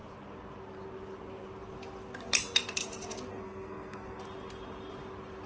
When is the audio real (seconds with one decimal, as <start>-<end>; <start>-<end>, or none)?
0.0-3.3; 4.2-5.5